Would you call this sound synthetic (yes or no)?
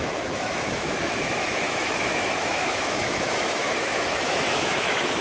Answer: yes